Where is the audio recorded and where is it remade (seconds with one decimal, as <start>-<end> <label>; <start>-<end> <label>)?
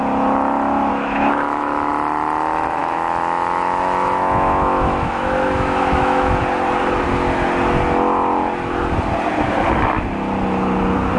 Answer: 0.0-0.9 recorded; 0.9-1.9 remade; 1.9-2.8 recorded; 2.8-6.4 remade; 6.4-11.2 recorded